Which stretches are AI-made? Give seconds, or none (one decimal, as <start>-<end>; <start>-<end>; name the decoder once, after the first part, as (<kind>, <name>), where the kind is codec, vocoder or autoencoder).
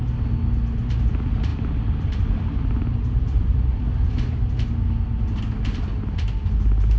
none